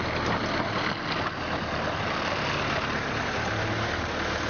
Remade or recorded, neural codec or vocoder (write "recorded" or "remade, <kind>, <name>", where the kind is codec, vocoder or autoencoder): recorded